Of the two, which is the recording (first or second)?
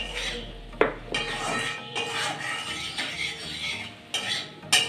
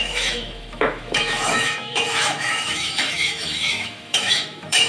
first